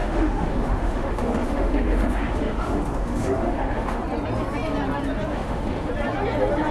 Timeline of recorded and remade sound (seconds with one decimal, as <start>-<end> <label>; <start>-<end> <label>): 0.0-4.0 remade; 4.0-5.3 recorded; 5.3-5.9 remade; 5.9-6.7 recorded